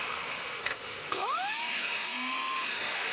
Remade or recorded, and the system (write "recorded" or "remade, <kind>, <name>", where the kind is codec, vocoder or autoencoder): remade, autoencoder, DAC-VAE